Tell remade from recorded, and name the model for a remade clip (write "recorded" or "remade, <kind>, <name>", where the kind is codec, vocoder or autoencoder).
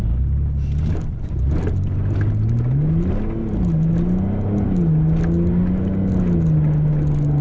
recorded